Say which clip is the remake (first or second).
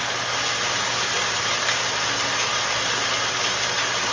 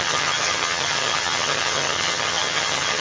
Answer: second